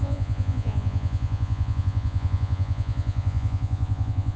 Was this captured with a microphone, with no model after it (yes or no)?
no